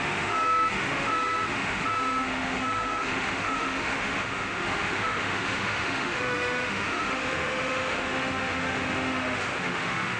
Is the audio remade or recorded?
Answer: remade